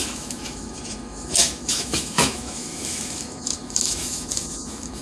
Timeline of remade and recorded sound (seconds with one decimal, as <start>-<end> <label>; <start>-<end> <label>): 0.0-5.0 remade